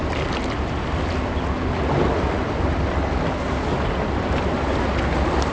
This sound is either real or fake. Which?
real